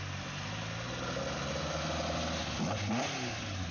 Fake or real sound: real